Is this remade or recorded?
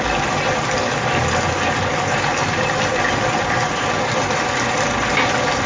recorded